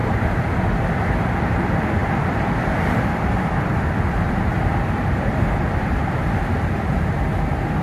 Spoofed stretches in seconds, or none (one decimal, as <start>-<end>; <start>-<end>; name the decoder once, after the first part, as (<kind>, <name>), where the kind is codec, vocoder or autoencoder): 0.0-1.0 (vocoder, BigVGAN v2); 2.0-6.4